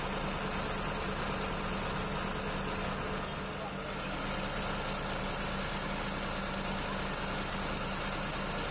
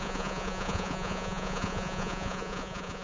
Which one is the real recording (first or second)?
first